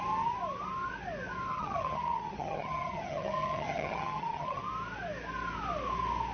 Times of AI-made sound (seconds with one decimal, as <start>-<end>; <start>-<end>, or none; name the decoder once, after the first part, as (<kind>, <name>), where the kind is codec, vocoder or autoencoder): 1.5-4.6 (vocoder, HiFi-GAN)